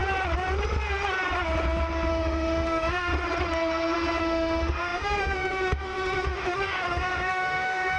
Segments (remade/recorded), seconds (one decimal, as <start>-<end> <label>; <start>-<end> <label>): 0.0-2.1 recorded; 2.1-3.1 remade; 3.1-4.2 recorded; 4.2-8.0 remade